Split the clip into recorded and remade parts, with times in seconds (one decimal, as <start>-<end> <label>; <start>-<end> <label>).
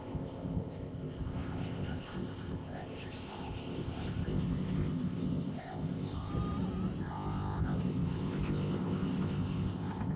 0.0-6.3 remade; 6.3-7.0 recorded; 7.0-10.2 remade